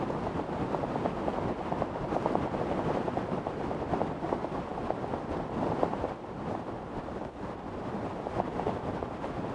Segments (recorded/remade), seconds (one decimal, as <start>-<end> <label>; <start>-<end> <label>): 0.0-9.5 recorded